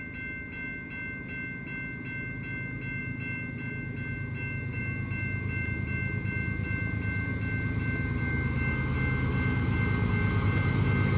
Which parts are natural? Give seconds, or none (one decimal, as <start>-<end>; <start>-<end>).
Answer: 0.0-11.2